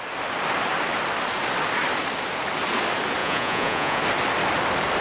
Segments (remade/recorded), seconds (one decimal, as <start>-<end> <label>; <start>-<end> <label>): 0.0-3.2 recorded; 3.2-4.0 remade; 4.0-5.0 recorded